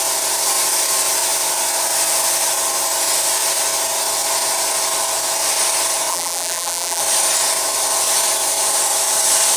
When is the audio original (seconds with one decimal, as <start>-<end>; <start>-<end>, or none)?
0.0-6.1; 7.0-9.6